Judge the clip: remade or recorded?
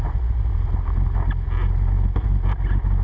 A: recorded